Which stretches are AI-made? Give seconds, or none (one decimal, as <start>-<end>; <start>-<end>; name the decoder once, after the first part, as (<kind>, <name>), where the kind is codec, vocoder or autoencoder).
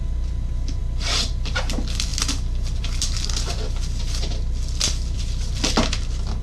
none